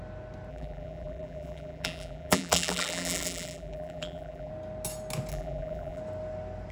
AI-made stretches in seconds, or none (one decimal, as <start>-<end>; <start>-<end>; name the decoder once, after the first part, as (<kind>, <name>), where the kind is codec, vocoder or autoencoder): 0.5-4.5 (vocoder, BigVGAN v2); 5.3-6.0